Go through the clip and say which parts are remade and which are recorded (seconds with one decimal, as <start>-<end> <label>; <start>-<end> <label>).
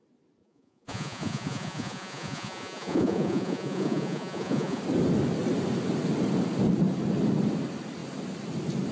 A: 0.0-0.4 recorded; 0.4-4.8 remade; 4.8-8.9 recorded